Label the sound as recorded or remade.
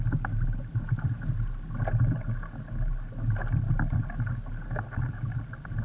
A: recorded